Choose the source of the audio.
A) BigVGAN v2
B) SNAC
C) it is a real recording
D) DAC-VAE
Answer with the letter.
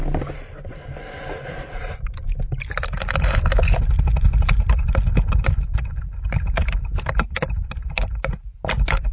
C